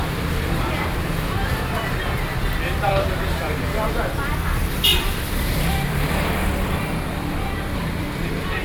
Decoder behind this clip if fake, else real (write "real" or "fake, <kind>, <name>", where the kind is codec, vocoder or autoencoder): fake, vocoder, BigVGAN v2